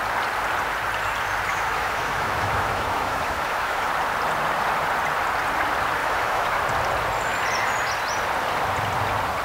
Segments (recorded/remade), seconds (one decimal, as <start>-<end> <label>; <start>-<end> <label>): 0.0-1.5 recorded; 1.5-3.9 remade; 3.9-6.0 recorded; 6.0-6.6 remade; 6.6-9.4 recorded